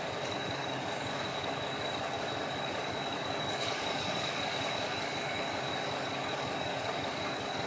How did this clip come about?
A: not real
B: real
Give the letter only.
A